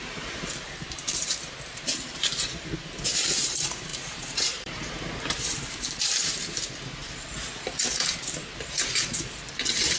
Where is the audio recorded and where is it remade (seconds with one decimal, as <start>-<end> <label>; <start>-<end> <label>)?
0.0-7.0 remade; 7.0-8.2 recorded; 8.2-10.0 remade